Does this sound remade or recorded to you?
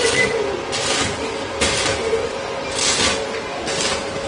recorded